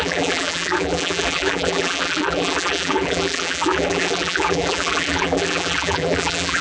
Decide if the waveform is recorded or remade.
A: remade